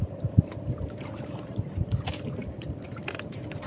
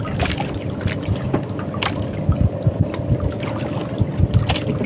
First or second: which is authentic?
second